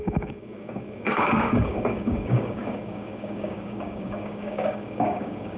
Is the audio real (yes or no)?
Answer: no